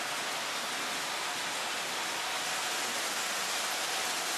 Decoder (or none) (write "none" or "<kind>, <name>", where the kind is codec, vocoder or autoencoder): none